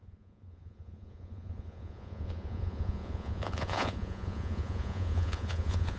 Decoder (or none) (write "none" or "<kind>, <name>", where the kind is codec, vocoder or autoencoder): vocoder, Vocos